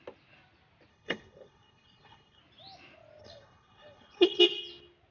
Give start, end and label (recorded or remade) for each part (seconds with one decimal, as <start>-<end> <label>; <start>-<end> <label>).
0.0-0.9 recorded; 0.9-2.4 remade; 2.4-3.2 recorded; 3.2-4.4 remade; 4.4-5.1 recorded